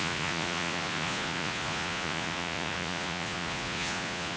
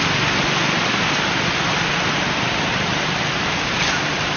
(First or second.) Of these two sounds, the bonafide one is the second